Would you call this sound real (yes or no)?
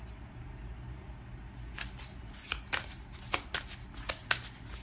yes